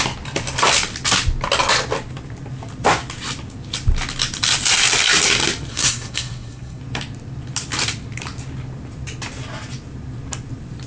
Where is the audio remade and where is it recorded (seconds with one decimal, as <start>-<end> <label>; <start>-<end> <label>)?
0.0-5.7 recorded; 5.7-6.8 remade; 6.8-10.9 recorded

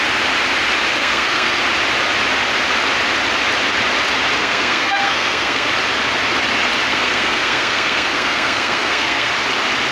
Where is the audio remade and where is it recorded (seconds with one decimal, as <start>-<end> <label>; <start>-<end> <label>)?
0.0-1.0 recorded; 1.0-1.6 remade; 1.6-4.4 recorded; 4.4-5.7 remade; 5.7-6.9 recorded; 6.9-9.3 remade; 9.3-9.9 recorded

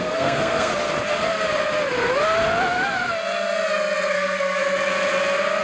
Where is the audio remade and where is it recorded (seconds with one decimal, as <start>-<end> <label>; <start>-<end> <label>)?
0.0-0.7 remade; 0.7-4.1 recorded; 4.1-4.6 remade; 4.6-5.6 recorded

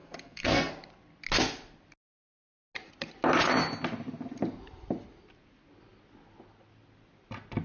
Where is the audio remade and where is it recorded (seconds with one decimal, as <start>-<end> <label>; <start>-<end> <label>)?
0.0-0.7 remade; 0.7-7.6 recorded

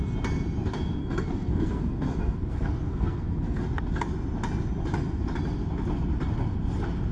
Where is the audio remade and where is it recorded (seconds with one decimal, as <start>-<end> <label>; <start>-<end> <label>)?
0.0-1.0 recorded; 1.0-3.6 remade; 3.6-7.1 recorded

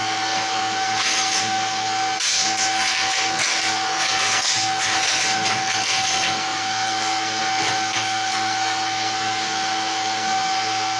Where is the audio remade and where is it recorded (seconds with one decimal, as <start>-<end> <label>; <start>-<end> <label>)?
0.0-11.0 remade

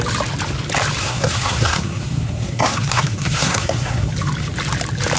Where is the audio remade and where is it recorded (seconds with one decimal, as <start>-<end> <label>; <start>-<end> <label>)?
0.0-1.0 recorded; 1.0-4.1 remade; 4.1-5.2 recorded

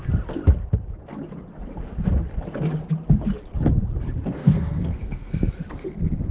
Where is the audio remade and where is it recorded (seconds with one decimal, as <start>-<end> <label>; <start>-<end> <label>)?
0.0-4.4 recorded; 4.4-5.5 remade; 5.5-6.3 recorded